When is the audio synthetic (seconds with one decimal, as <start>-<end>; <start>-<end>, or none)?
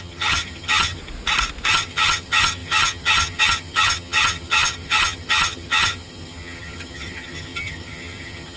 0.0-1.0; 1.7-8.6